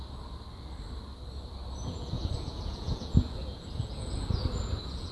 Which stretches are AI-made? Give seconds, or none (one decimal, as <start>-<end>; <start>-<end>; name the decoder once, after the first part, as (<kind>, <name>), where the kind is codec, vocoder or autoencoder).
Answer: 1.8-5.1 (vocoder, Vocos)